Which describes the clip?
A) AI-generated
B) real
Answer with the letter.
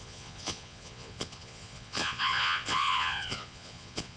A